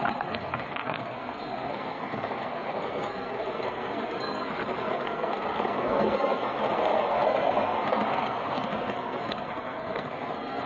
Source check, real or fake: fake